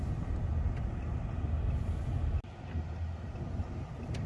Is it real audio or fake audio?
real